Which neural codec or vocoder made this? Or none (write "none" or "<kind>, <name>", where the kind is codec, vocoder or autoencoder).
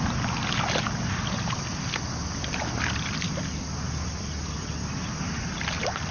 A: none